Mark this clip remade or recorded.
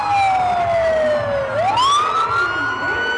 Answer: recorded